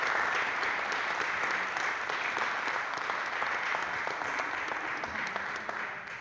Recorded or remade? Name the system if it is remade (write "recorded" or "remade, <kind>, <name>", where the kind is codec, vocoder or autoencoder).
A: recorded